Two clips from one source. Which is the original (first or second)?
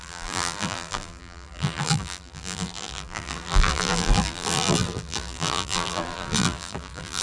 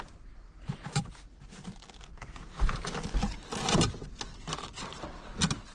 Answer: second